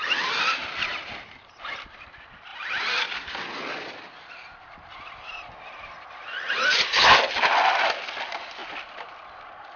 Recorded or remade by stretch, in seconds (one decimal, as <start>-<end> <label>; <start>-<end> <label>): 0.0-0.6 recorded; 0.6-2.0 remade; 2.0-2.5 recorded; 2.5-7.3 remade; 7.3-9.8 recorded